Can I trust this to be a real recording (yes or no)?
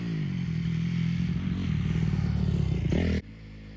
yes